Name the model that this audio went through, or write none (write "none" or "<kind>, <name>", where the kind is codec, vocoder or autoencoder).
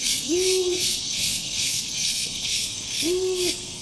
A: codec, SNAC